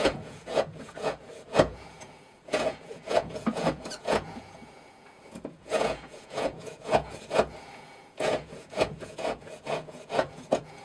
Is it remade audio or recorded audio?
remade